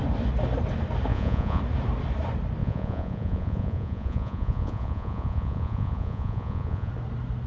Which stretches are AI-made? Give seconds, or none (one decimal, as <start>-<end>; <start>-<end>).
1.1-1.6; 2.6-6.9